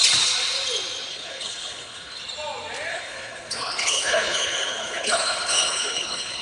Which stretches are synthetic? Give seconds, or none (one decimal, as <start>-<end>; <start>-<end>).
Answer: 1.1-2.2; 2.9-6.4